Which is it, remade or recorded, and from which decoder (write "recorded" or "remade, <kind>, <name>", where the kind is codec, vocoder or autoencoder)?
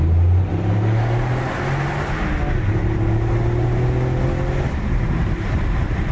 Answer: recorded